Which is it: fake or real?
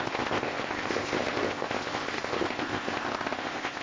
fake